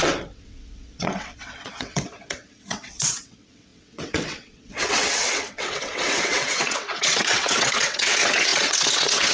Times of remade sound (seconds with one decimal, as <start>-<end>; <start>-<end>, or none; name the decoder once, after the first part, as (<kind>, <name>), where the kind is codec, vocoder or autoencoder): 0.0-9.3 (vocoder, WaveNeXt)